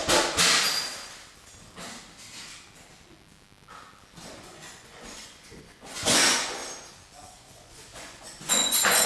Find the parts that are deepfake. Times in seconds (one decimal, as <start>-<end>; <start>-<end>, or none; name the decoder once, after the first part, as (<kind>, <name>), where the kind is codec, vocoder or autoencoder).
4.3-6.6 (vocoder, Vocos); 7.3-9.1